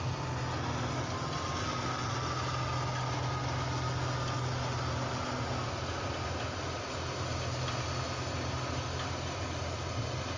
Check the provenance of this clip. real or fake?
real